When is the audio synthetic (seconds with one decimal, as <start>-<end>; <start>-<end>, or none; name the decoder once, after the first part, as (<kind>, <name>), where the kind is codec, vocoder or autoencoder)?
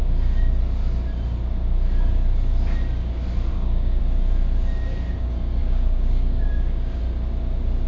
3.5-4.0 (codec, DAC); 5.6-7.0